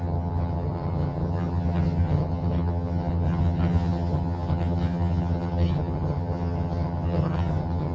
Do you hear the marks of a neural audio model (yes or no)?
yes